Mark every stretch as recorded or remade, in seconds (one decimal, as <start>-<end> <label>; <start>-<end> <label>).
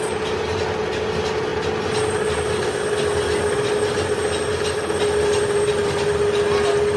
0.0-7.0 recorded